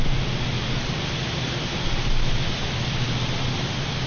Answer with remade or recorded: recorded